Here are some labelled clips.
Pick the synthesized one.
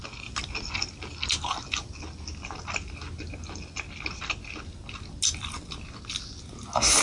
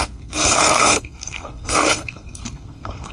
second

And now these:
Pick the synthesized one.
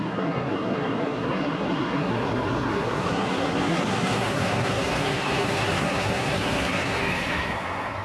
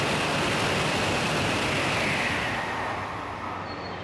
first